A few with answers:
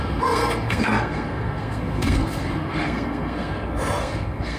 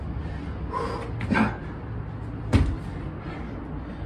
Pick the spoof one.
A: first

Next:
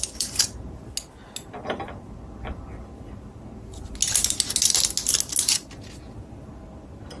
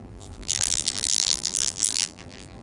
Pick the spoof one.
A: second